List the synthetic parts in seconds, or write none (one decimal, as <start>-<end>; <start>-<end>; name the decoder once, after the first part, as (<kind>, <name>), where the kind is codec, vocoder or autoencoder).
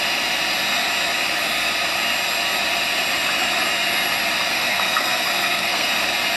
4.5-5.9 (codec, SNAC)